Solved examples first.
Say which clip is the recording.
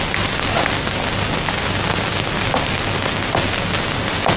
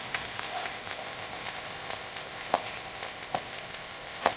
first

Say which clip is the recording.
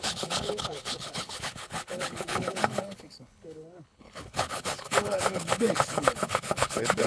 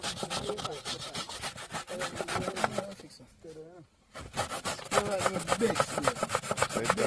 second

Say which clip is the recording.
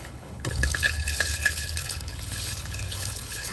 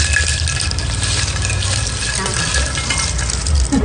second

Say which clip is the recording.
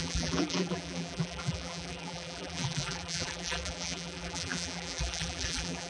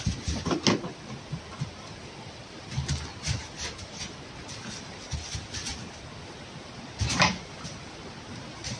second